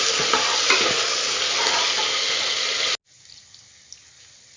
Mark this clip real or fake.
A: real